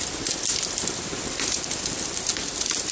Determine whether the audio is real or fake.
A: real